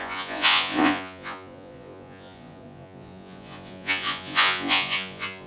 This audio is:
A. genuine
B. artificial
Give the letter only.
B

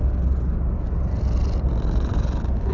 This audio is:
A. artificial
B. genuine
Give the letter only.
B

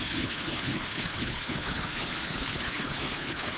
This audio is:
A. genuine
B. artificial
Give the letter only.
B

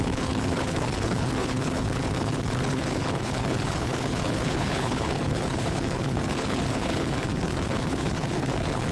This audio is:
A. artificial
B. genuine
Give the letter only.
A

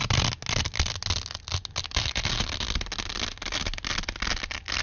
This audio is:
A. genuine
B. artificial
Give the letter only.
A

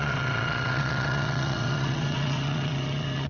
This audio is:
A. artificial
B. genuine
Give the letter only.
A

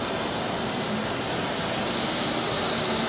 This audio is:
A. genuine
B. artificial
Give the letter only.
A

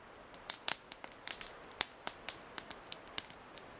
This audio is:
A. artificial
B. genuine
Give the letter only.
B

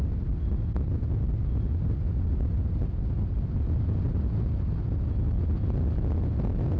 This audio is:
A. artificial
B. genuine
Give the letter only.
B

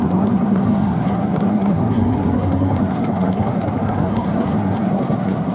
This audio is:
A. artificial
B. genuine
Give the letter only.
A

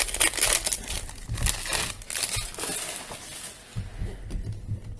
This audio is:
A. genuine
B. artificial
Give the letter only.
A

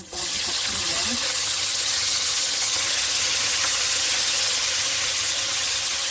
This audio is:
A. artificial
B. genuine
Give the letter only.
A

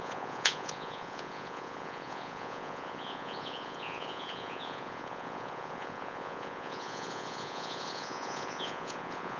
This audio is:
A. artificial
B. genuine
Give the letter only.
A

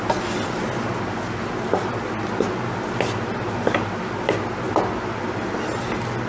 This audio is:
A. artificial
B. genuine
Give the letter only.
B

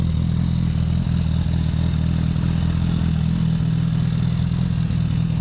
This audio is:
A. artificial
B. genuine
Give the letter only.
B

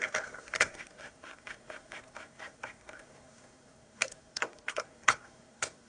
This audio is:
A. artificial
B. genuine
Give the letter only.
A